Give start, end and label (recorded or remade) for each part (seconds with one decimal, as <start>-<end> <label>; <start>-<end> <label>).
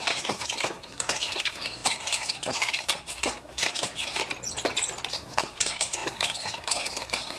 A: 0.0-4.2 remade; 4.2-5.1 recorded; 5.1-7.4 remade